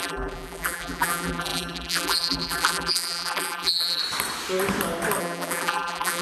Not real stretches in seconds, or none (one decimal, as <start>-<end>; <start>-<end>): 0.0-4.0; 5.2-6.2